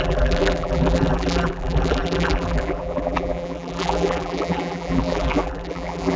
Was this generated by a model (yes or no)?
yes